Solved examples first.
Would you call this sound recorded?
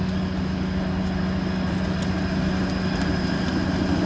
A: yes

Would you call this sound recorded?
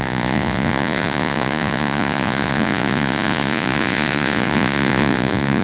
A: no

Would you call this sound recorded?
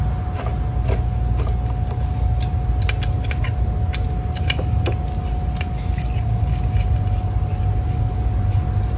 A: yes